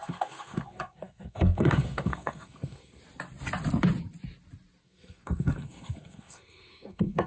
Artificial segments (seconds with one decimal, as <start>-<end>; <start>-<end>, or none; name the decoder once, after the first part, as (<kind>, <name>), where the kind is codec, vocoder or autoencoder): 0.0-3.0 (codec, SNAC); 4.8-7.3